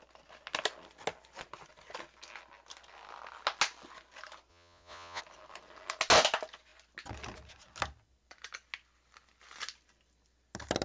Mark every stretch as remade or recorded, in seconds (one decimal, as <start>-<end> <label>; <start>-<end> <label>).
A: 0.0-4.5 recorded; 4.5-5.2 remade; 5.2-10.8 recorded